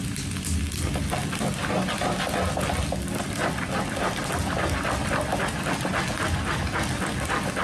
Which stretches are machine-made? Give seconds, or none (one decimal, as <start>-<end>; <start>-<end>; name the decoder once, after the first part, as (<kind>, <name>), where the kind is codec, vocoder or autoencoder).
none